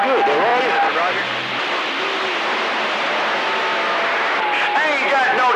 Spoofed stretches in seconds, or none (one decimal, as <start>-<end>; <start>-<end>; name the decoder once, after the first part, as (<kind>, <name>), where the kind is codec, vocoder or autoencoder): none